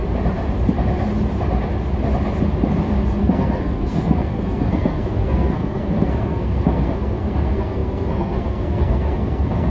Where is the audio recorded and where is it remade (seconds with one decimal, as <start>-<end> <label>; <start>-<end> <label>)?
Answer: 0.0-3.2 recorded; 3.2-9.7 remade